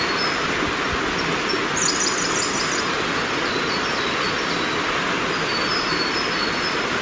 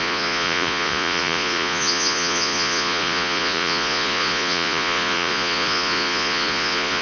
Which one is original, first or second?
first